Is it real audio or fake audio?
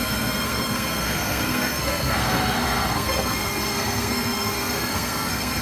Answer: fake